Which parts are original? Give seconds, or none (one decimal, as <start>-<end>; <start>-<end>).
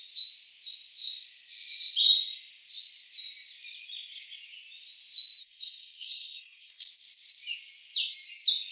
0.0-5.4; 6.9-8.7